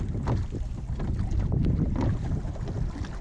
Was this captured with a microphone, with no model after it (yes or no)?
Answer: yes